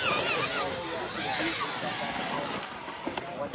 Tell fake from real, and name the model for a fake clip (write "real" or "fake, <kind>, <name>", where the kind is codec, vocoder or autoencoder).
real